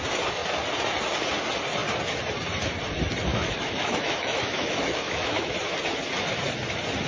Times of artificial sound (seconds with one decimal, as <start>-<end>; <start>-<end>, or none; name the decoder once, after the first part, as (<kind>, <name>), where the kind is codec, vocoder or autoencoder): 3.3-5.6 (autoencoder, DAC-VAE)